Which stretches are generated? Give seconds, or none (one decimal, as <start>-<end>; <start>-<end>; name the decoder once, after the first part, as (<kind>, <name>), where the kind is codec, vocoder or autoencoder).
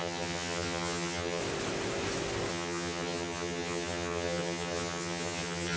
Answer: 0.0-1.4 (vocoder, HiFi-GAN); 2.5-5.8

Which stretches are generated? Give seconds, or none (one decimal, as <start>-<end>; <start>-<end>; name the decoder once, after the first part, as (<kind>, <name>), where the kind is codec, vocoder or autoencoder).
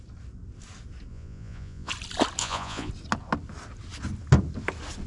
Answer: 1.1-1.9 (vocoder, Vocos); 2.4-2.9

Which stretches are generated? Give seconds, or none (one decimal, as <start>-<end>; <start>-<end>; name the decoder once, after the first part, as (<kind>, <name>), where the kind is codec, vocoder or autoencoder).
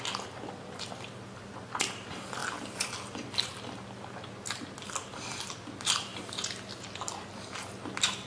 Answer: none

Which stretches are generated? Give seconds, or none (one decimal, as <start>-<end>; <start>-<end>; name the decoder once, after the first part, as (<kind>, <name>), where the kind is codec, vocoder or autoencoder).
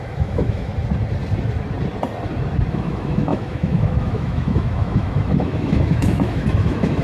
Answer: 0.0-0.7 (autoencoder, DAC-VAE); 2.7-7.0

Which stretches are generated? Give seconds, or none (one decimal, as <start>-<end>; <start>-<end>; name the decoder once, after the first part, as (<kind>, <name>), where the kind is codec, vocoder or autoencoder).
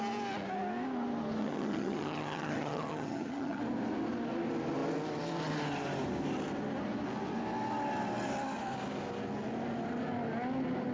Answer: 1.4-3.6 (vocoder, HiFi-GAN)